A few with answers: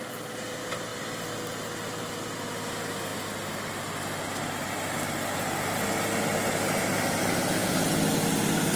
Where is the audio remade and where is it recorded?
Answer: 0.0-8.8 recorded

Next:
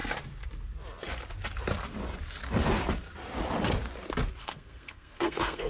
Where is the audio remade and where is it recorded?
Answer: 0.0-4.4 recorded; 4.4-5.7 remade

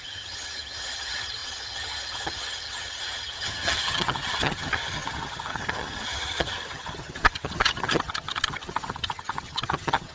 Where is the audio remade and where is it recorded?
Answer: 0.0-10.1 remade

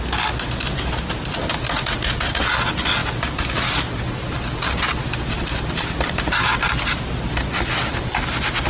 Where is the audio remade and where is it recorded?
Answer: 0.0-8.7 recorded

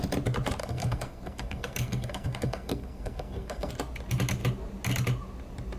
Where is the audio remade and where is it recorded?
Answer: 0.0-0.6 recorded; 0.6-3.7 remade; 3.7-5.8 recorded

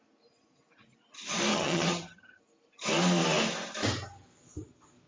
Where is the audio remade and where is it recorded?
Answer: 0.0-1.5 recorded; 1.5-2.4 remade; 2.4-5.1 recorded

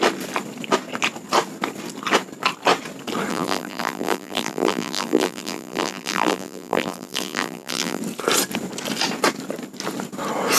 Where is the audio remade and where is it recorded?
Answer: 0.0-3.3 recorded; 3.3-8.0 remade; 8.0-10.6 recorded